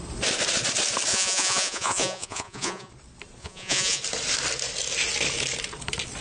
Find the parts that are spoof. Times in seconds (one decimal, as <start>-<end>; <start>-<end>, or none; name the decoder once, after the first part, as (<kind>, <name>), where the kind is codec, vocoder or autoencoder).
1.1-2.9 (vocoder, Vocos); 3.4-4.0